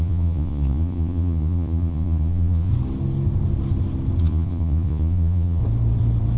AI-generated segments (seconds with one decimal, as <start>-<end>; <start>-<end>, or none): 0.0-2.7; 4.2-5.6